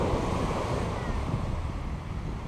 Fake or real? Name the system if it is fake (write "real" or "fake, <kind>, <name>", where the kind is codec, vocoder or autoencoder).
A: real